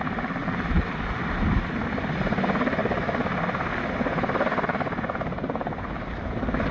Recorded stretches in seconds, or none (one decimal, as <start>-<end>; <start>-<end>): 0.0-6.7